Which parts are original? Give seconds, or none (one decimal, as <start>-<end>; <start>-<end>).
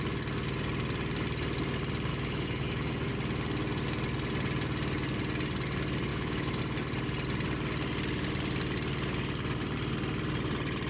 0.0-2.1; 3.1-6.1; 6.6-10.9